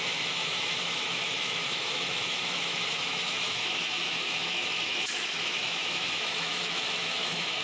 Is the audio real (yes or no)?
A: no